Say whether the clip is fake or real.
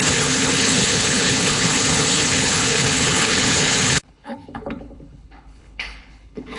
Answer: fake